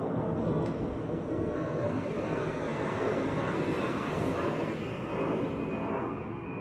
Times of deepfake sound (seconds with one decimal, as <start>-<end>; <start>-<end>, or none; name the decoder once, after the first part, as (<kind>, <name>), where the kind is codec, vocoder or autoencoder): 0.0-5.1 (codec, SNAC); 5.9-6.6